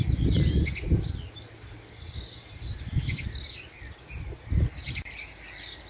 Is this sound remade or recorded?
recorded